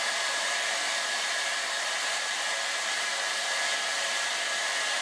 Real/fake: fake